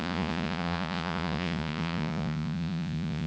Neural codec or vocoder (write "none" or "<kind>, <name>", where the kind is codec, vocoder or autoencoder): vocoder, Vocos